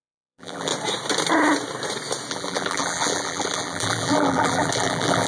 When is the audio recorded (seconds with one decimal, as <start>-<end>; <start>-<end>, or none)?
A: 0.7-2.3